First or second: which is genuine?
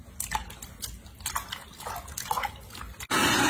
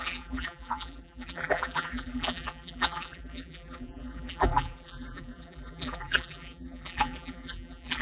first